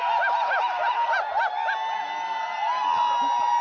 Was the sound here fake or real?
real